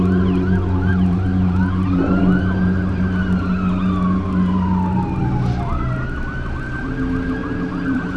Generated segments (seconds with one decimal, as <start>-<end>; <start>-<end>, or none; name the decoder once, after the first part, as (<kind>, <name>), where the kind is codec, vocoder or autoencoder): 0.9-2.2 (vocoder, BigVGAN v2); 7.4-8.2